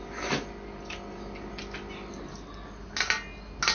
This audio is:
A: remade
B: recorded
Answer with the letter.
B